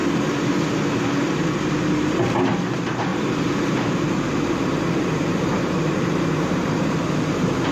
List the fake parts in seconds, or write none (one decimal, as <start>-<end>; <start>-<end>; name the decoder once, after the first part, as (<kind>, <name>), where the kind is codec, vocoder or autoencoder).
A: 3.1-7.7 (vocoder, BigVGAN v2)